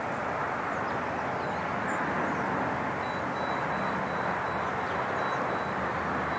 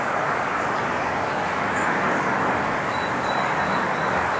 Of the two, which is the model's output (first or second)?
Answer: second